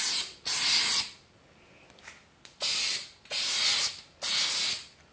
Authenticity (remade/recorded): recorded